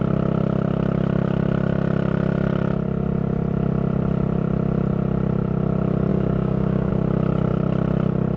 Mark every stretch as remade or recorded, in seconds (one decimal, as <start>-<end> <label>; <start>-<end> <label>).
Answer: 0.0-6.1 recorded; 6.1-6.9 remade; 6.9-8.4 recorded